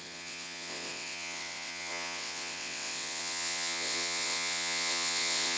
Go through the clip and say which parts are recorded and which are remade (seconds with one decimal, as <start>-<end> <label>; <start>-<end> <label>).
0.0-5.6 remade